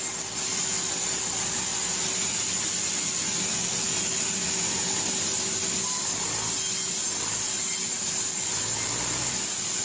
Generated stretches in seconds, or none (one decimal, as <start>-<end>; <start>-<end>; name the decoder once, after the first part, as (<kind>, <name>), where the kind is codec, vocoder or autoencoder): none